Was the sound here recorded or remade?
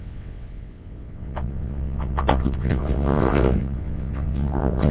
remade